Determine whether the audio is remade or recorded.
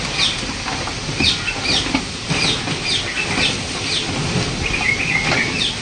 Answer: recorded